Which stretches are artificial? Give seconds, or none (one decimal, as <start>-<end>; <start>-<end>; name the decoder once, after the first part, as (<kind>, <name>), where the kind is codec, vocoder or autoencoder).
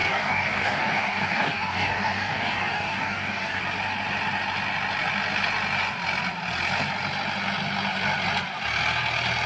0.0-3.6 (codec, DAC)